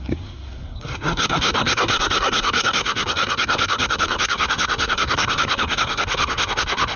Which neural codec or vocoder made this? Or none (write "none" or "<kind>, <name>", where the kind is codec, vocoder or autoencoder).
codec, SNAC